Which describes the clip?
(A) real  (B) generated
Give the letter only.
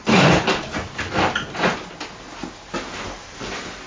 A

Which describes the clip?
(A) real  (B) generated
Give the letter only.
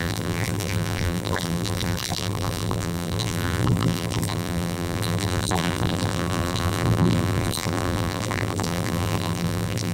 B